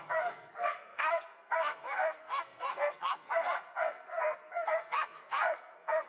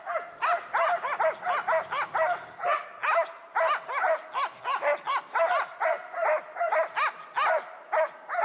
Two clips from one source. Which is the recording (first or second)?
second